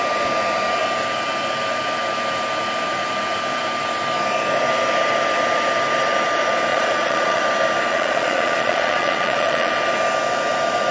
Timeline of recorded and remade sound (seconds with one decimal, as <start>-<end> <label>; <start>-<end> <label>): 0.0-6.7 recorded; 6.7-7.4 remade; 7.4-7.9 recorded; 7.9-9.7 remade; 9.7-10.9 recorded